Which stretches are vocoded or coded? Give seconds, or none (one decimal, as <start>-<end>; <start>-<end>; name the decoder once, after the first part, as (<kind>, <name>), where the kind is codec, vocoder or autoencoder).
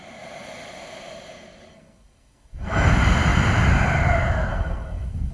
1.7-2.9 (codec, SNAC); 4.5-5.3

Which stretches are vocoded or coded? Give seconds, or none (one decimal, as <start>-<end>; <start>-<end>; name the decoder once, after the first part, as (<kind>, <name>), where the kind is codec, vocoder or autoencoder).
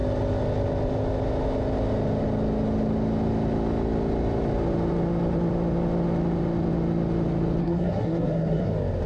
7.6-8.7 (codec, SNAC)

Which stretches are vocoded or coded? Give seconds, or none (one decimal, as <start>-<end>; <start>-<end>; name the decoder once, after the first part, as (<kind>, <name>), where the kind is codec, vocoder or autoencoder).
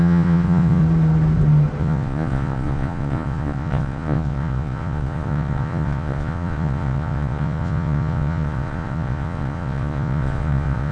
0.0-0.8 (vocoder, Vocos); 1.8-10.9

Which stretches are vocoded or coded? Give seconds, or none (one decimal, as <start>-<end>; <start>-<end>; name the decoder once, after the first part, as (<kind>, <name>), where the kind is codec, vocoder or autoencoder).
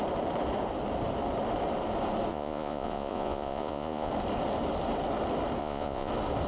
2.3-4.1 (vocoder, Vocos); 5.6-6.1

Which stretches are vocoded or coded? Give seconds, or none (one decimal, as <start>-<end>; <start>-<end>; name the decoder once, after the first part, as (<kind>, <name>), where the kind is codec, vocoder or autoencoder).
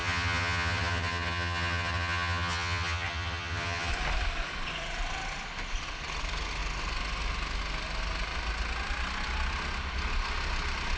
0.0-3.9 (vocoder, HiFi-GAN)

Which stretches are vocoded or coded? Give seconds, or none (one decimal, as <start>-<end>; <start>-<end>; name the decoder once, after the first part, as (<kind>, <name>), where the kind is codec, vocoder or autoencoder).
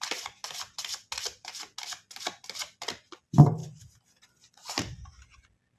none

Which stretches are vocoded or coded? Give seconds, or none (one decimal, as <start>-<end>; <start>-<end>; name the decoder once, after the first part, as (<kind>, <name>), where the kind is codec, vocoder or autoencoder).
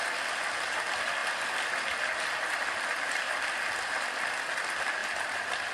none